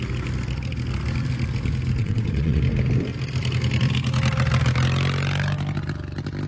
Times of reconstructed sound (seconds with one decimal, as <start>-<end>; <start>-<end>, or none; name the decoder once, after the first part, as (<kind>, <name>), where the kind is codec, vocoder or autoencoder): 2.0-2.6 (vocoder, WaveNeXt)